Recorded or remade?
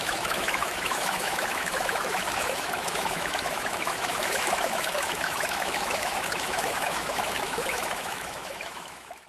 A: remade